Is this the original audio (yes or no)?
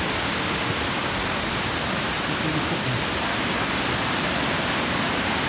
yes